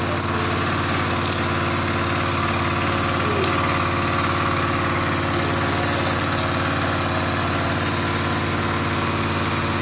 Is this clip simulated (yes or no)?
no